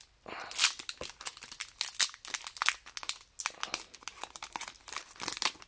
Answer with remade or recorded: recorded